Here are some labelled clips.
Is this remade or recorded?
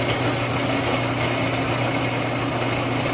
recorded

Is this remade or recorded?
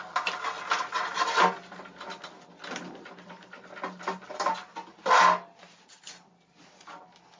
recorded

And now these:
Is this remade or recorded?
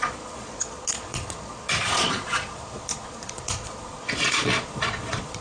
remade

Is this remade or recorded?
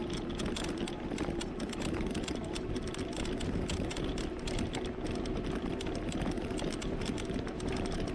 recorded